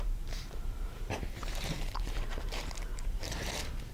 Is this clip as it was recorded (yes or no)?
no